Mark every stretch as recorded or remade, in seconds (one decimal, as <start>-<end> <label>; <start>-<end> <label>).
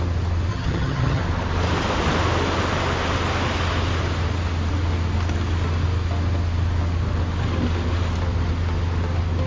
0.0-0.5 recorded; 0.5-1.2 remade; 1.2-9.5 recorded